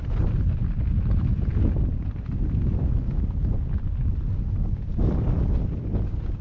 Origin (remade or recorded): recorded